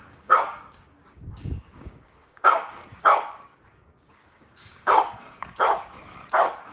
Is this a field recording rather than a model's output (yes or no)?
no